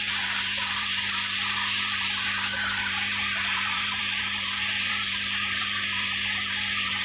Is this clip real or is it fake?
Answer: fake